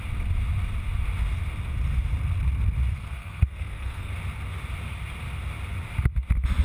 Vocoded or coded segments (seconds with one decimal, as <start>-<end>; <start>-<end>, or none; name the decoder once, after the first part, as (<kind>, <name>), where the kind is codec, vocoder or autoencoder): 2.9-4.1 (codec, SNAC)